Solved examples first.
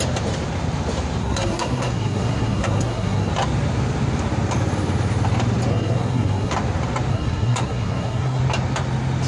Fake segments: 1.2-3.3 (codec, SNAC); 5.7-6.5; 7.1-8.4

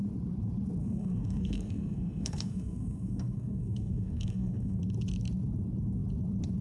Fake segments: 0.8-4.8 (codec, SNAC)

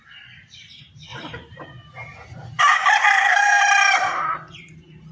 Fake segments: 3.0-3.6 (codec, SNAC)

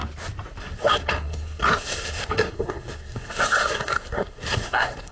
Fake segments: 0.6-5.1 (codec, SNAC)

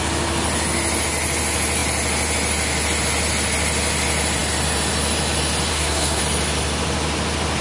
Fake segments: 5.7-6.2 (codec, SNAC)

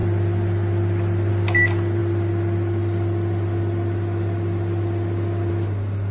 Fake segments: none

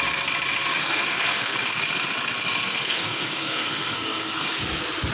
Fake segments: 0.8-1.8 (codec, SNAC); 2.6-4.6